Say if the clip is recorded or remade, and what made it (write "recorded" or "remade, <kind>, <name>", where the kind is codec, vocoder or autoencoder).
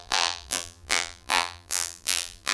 remade, vocoder, BigVGAN v2